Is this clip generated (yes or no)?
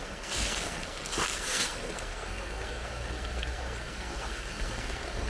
yes